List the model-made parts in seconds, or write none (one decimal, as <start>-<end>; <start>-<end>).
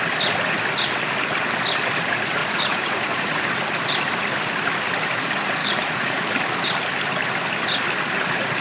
2.4-3.5; 5.6-6.2